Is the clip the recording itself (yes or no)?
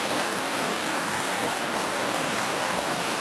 no